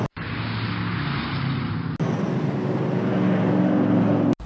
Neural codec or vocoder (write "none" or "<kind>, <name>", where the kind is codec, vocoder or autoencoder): none